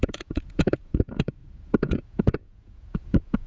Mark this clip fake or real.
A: fake